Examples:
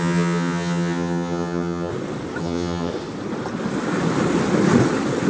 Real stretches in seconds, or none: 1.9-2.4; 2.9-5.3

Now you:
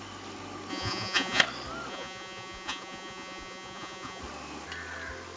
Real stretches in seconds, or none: 0.0-0.7; 1.4-1.9; 4.2-5.4

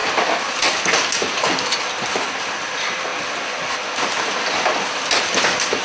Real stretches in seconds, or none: 0.0-5.8